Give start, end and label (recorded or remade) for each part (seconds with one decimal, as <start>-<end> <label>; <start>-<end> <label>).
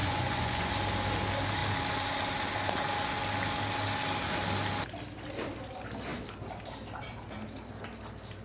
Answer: 0.0-0.7 remade; 0.7-8.4 recorded